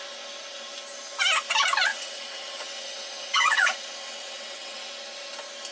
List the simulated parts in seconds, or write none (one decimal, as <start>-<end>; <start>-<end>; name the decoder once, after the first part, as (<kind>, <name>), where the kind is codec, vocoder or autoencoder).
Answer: 1.9-4.9 (vocoder, WaveNeXt)